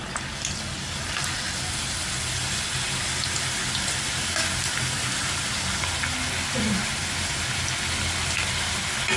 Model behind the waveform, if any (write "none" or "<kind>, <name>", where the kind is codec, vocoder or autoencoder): none